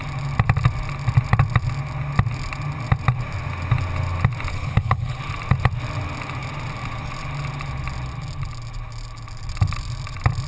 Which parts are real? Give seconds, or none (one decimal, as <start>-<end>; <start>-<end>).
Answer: 0.0-4.5; 5.2-10.5

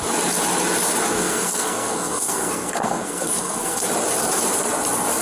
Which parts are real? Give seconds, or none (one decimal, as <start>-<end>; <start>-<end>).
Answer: 0.0-1.1; 3.9-5.2

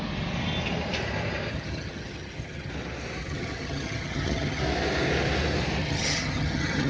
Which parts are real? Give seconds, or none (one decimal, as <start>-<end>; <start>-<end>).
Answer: 0.0-1.5; 2.7-3.2; 4.6-5.8

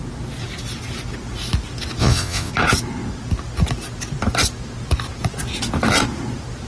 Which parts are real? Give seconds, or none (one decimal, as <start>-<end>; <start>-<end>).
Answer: 0.0-2.0; 2.5-6.7

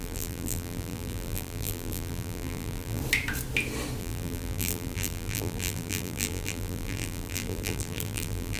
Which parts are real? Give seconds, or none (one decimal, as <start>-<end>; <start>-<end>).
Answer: 3.0-4.0